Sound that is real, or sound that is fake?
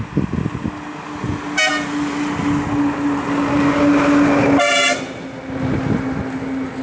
real